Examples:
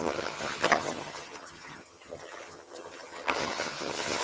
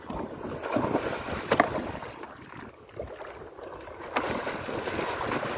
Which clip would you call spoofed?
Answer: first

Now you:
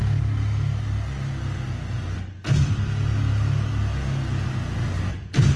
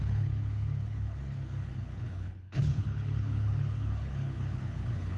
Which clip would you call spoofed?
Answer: second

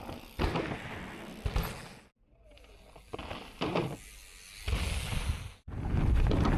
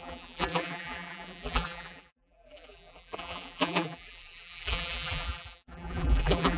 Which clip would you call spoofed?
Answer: second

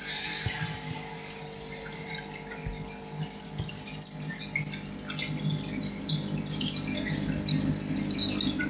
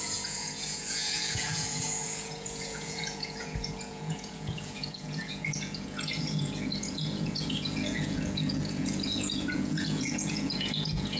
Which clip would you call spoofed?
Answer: second